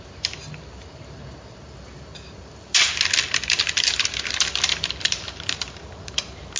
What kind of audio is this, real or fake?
real